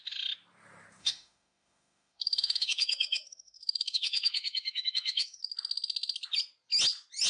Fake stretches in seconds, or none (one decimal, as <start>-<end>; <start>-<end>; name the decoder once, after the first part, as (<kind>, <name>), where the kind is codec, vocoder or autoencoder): 1.0-5.4 (autoencoder, DAC-VAE)

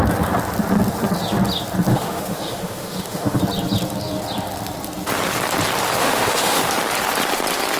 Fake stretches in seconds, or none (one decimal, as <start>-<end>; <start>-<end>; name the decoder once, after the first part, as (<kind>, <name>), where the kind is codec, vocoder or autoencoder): 1.9-3.4 (autoencoder, DAC-VAE); 6.0-6.6